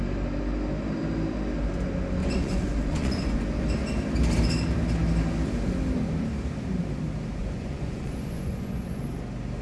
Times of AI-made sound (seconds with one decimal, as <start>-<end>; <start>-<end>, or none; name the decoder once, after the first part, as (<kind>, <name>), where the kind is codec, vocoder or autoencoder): 2.2-3.4 (vocoder, Vocos); 7.4-9.0